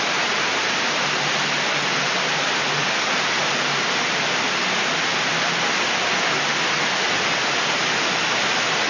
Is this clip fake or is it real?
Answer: real